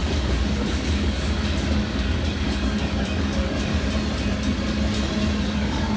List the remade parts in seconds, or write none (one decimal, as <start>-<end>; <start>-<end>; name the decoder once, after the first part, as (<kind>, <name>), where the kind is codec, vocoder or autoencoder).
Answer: 0.0-3.7 (codec, DAC); 5.4-6.0